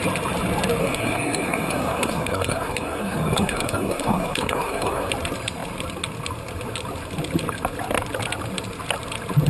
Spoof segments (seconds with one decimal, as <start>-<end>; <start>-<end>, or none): 0.8-5.1